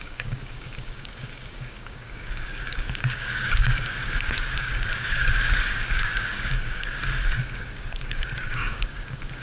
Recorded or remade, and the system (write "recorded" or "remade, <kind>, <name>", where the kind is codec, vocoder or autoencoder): remade, codec, DAC